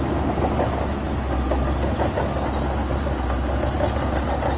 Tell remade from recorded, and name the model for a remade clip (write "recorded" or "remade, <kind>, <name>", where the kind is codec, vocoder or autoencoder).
recorded